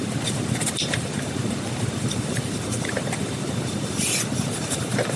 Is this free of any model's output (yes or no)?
no